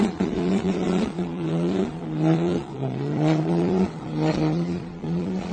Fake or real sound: fake